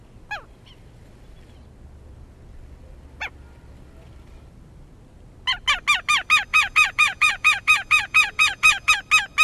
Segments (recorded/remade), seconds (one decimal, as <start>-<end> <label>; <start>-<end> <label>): 0.0-6.5 recorded; 6.5-8.9 remade; 8.9-9.4 recorded

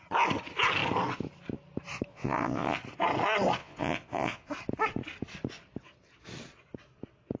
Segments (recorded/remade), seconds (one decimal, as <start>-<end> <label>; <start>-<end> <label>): 0.0-2.1 recorded; 2.1-2.8 remade; 2.8-3.6 recorded; 3.6-4.5 remade; 4.5-7.4 recorded

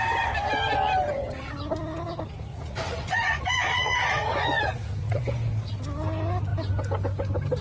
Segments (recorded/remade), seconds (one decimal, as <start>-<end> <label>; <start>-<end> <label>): 0.0-2.5 recorded; 2.5-5.2 remade; 5.2-7.6 recorded

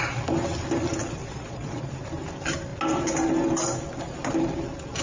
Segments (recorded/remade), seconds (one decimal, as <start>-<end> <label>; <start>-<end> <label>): 0.0-1.2 recorded; 1.2-1.9 remade; 1.9-5.0 recorded

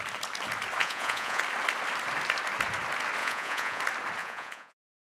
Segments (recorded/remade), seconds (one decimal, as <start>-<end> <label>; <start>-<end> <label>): 0.0-0.8 recorded; 0.8-1.4 remade; 1.4-3.2 recorded; 3.2-3.8 remade; 3.8-4.2 recorded; 4.2-5.0 remade

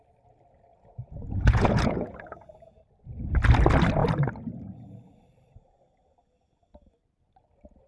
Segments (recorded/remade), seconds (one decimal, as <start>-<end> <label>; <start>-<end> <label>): 0.0-0.7 recorded; 0.7-2.8 remade; 2.8-7.9 recorded